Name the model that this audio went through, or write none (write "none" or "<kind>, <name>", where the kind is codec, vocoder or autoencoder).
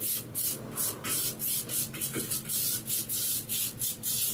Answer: none